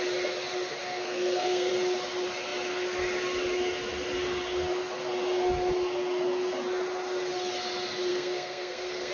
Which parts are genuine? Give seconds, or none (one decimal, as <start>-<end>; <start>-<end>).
0.0-0.8; 1.7-8.1